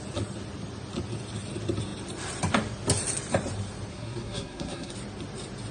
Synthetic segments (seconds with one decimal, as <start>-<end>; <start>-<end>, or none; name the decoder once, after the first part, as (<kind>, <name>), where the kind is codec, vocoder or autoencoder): 3.9-4.9 (codec, SNAC)